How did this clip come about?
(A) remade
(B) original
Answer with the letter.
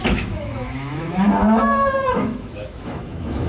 A